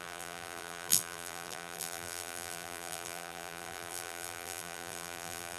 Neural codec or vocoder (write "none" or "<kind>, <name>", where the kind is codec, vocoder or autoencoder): vocoder, BigVGAN v2